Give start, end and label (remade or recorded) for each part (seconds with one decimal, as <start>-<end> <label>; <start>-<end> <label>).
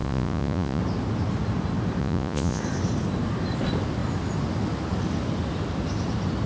0.0-0.8 remade; 0.8-2.0 recorded; 2.0-2.6 remade; 2.6-6.5 recorded